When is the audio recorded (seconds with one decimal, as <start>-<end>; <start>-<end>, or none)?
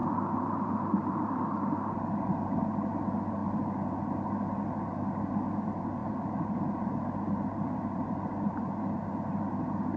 2.3-6.0; 8.7-10.0